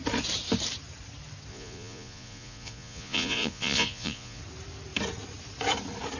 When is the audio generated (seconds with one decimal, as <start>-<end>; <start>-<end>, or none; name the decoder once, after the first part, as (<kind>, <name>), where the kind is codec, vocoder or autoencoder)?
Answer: 1.5-4.4 (vocoder, Vocos)